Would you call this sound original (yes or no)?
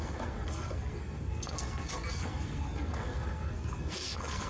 no